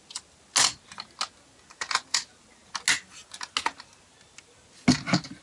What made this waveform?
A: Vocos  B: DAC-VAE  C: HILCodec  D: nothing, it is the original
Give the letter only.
D